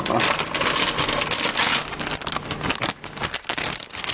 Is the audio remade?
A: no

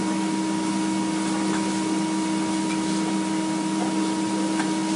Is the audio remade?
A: no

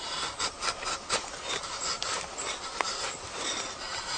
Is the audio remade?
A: no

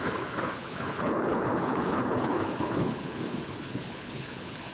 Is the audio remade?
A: yes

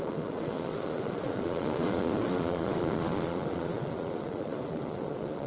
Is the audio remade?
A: yes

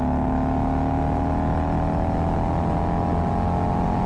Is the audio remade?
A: no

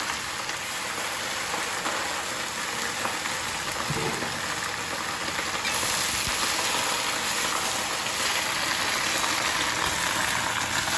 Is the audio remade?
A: no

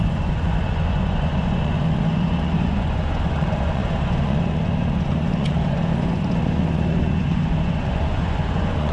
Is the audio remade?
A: yes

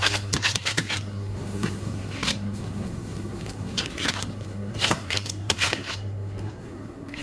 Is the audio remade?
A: yes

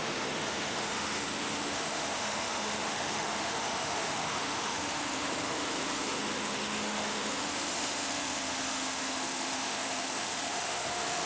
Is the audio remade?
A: yes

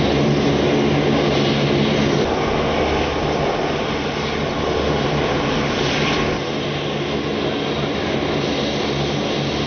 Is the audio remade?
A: no